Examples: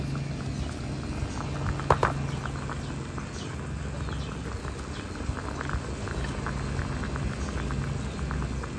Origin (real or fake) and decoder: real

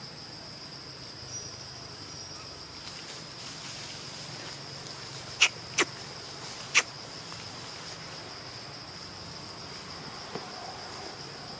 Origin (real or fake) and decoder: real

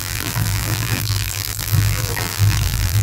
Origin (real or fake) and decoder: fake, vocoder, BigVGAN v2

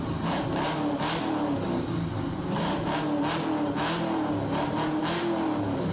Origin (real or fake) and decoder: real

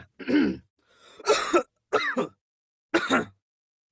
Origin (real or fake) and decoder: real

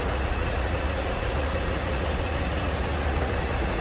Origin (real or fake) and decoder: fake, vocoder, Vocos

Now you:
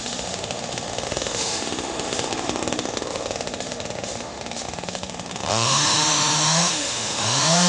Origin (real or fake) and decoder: fake, autoencoder, DAC-VAE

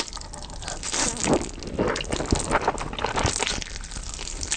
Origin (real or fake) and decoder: real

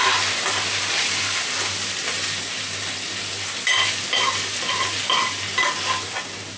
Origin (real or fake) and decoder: real